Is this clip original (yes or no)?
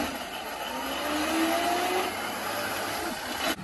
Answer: yes